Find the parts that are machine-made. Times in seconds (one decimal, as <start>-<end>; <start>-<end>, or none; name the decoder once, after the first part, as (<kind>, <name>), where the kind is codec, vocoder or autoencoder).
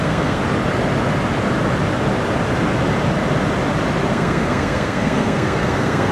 0.0-0.4 (codec, SNAC); 4.1-6.1